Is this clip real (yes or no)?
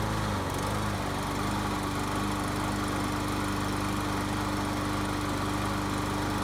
yes